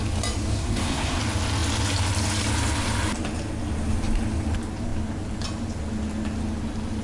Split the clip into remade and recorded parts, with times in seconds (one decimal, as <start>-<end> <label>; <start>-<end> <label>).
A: 0.0-0.5 recorded; 0.5-1.2 remade; 1.2-7.0 recorded